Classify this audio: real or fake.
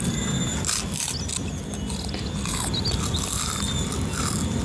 real